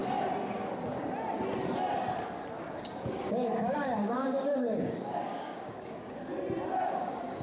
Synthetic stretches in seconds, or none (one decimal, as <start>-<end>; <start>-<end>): 2.7-6.3; 6.9-7.4

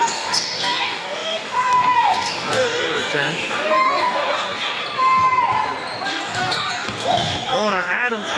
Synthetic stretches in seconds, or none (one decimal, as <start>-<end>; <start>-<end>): 0.0-4.8; 6.1-8.4

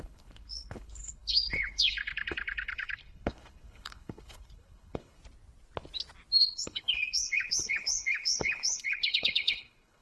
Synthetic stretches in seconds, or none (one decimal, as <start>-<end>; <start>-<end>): 0.0-5.2; 6.4-10.0

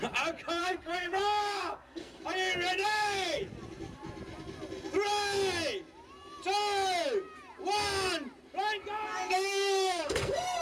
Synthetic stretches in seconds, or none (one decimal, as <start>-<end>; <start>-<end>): 0.6-2.2; 2.8-3.4; 9.3-10.6

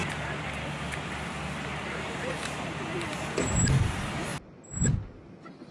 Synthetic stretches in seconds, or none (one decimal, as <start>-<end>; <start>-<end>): none

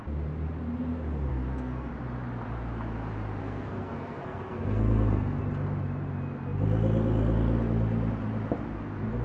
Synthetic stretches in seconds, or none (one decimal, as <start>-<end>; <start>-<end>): 1.3-1.9; 3.4-5.4

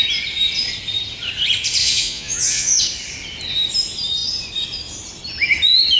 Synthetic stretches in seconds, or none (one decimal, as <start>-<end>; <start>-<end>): 1.8-2.8

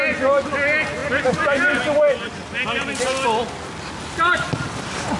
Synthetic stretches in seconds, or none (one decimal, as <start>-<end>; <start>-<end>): none